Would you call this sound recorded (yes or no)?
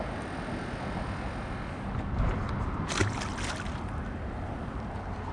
yes